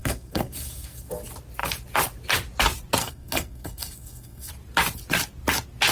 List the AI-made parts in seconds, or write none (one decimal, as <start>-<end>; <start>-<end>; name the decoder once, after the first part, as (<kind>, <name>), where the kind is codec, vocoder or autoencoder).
0.0-1.1 (codec, SNAC); 3.0-4.5